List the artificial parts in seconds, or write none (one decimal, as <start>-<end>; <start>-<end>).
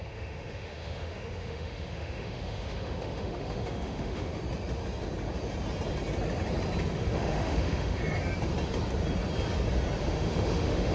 0.0-4.3; 6.9-8.0; 10.0-10.9